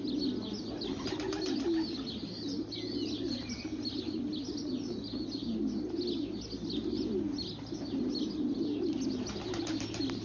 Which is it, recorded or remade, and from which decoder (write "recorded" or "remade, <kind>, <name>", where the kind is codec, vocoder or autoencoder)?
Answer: recorded